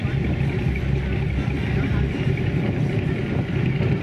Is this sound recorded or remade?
remade